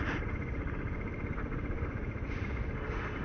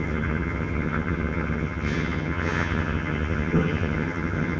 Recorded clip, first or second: first